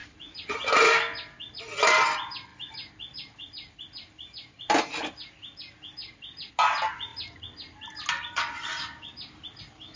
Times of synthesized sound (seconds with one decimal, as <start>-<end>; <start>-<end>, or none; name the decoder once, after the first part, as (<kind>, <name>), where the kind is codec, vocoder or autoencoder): none